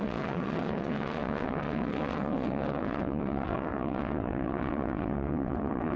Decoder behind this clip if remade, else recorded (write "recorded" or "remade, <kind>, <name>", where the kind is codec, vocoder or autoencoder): remade, vocoder, WaveNeXt